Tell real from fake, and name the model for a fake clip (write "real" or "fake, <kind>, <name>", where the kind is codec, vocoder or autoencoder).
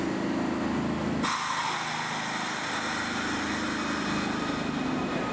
real